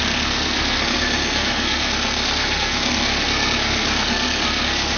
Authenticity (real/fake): fake